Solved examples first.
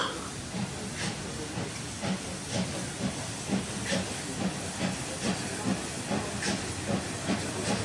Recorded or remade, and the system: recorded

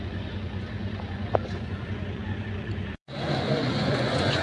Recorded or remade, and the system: remade, vocoder, Vocos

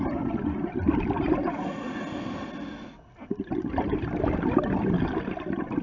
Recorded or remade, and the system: recorded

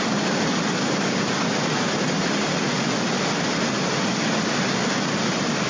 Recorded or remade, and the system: recorded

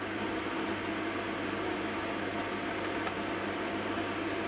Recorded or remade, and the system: recorded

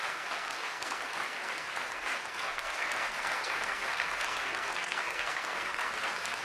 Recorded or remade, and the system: remade, codec, SNAC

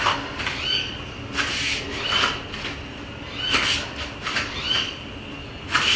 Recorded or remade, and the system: recorded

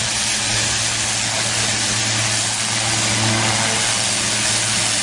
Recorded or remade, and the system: recorded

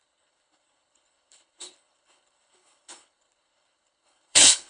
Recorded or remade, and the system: remade, codec, HILCodec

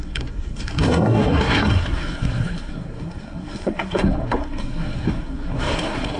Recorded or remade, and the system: remade, codec, SNAC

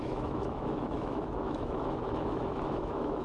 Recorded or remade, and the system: remade, autoencoder, DAC-VAE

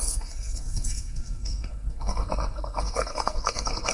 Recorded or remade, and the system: remade, codec, SNAC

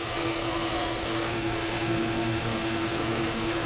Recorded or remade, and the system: remade, codec, SNAC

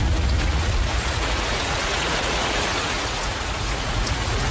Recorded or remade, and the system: remade, vocoder, Vocos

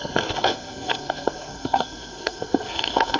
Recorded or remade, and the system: remade, codec, SNAC